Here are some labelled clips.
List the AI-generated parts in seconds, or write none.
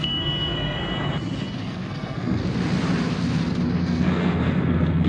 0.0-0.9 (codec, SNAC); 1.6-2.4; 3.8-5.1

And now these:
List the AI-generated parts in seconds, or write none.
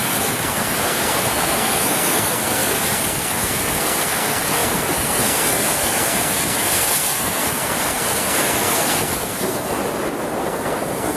0.0-9.8 (codec, SNAC); 10.4-11.2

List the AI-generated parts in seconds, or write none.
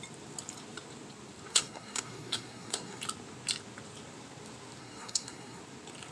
1.5-3.0 (codec, SNAC); 4.8-5.6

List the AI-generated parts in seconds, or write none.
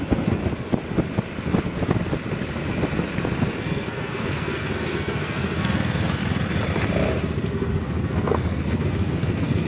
0.0-0.4 (codec, SNAC); 3.6-6.2; 7.5-9.7